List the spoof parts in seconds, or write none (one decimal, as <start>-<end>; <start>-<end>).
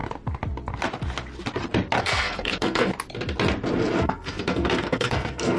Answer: 2.0-2.9; 4.0-5.6